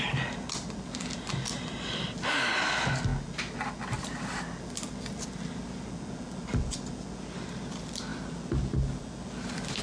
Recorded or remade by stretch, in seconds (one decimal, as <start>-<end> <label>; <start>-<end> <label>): 0.0-9.8 recorded